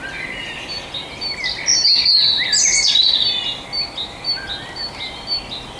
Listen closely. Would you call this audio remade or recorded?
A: recorded